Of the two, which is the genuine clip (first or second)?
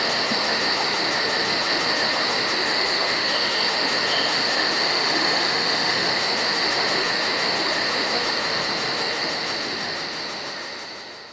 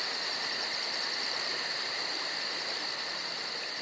second